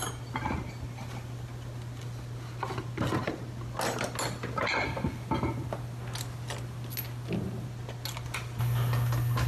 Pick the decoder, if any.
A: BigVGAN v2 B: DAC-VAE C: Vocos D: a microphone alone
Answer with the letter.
D